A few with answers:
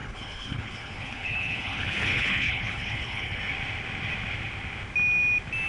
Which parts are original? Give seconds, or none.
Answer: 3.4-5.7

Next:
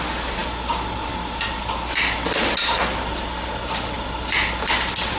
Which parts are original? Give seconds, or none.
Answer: 0.0-5.2